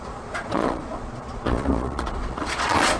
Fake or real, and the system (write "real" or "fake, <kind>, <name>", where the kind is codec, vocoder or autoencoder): fake, vocoder, Vocos